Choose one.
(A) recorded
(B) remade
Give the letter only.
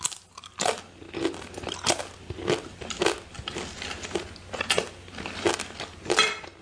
A